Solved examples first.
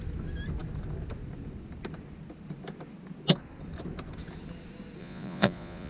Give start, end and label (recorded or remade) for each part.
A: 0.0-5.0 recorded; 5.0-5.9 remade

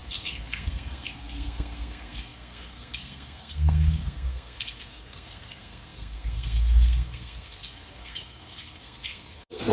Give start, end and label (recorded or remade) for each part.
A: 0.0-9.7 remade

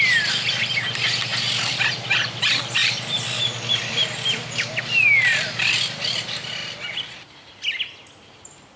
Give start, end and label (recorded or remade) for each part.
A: 0.0-1.3 recorded; 1.3-1.9 remade; 1.9-2.8 recorded; 2.8-4.8 remade; 4.8-8.8 recorded

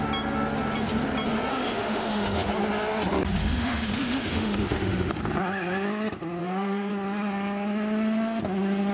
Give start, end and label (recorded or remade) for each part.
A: 0.0-1.5 recorded; 1.5-2.5 remade; 2.5-3.4 recorded; 3.4-5.2 remade; 5.2-6.4 recorded; 6.4-6.9 remade; 6.9-8.9 recorded

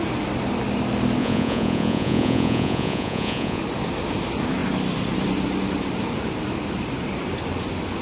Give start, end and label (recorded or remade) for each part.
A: 0.0-1.2 recorded; 1.2-3.6 remade; 3.6-8.0 recorded

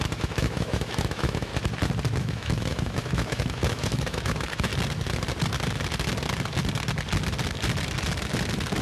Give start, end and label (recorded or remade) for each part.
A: 0.0-1.5 remade; 1.5-2.2 recorded; 2.2-4.7 remade; 4.7-8.8 recorded